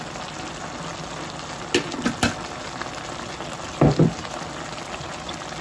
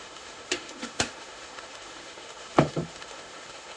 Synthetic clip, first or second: second